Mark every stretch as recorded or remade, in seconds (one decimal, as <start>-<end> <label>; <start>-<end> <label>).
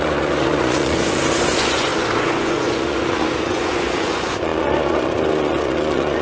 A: 0.0-6.2 remade